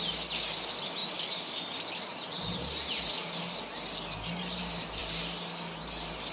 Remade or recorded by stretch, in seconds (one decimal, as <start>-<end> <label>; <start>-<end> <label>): 0.0-6.3 recorded